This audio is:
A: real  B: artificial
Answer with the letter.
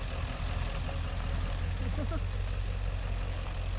A